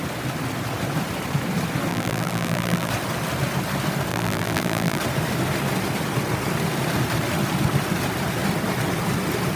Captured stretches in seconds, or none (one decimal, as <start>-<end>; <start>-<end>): 0.0-1.9; 2.9-4.1; 5.0-9.6